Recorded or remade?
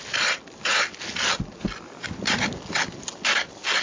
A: recorded